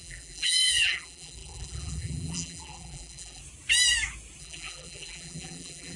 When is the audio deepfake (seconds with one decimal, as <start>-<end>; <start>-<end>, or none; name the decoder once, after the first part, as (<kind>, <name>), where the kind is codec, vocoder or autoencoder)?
0.0-3.4 (vocoder, BigVGAN v2); 4.4-6.0

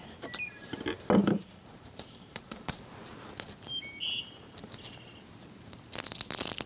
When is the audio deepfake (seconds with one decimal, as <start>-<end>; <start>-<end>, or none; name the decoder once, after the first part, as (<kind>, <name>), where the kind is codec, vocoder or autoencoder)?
1.2-2.9 (vocoder, BigVGAN v2)

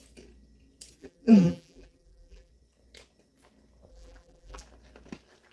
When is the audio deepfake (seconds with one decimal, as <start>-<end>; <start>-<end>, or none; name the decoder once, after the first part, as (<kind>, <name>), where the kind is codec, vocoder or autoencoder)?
1.0-2.5 (vocoder, BigVGAN v2); 3.9-4.6